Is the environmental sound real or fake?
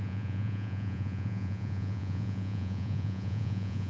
fake